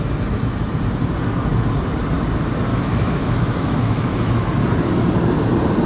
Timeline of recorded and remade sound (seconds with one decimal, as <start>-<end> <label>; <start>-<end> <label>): 0.0-2.7 recorded; 2.7-4.3 remade; 4.3-5.9 recorded